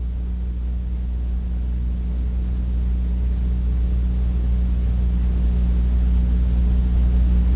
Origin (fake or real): real